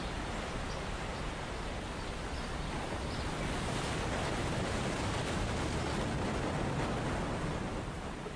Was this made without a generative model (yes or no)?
yes